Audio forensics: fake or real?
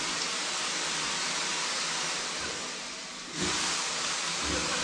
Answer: fake